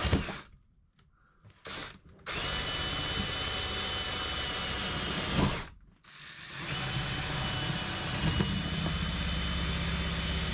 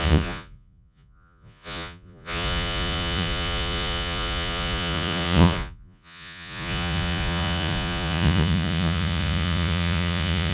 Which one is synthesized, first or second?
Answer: second